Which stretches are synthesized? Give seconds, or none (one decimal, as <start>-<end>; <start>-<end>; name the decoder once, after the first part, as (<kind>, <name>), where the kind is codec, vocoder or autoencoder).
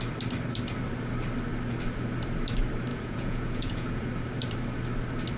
2.9-4.1 (vocoder, Vocos)